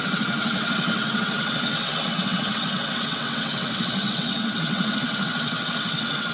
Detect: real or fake fake